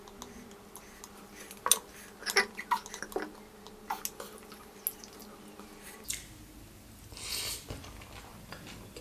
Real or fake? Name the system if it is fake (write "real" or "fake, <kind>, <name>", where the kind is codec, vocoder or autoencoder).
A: real